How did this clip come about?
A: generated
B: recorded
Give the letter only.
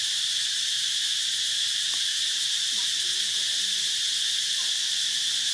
A